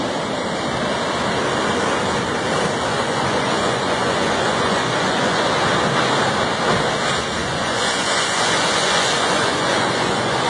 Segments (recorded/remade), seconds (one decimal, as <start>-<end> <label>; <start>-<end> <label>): 0.0-2.9 recorded; 2.9-5.5 remade; 5.5-7.4 recorded; 7.4-10.5 remade

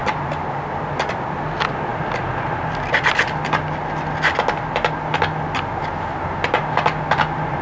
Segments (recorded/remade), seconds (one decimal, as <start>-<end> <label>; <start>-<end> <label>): 0.0-7.6 recorded